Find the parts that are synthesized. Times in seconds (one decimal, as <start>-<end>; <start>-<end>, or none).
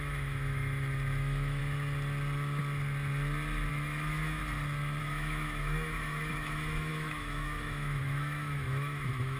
0.0-1.6; 3.7-4.4; 5.0-9.4